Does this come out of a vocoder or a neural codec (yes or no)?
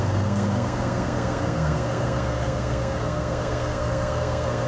yes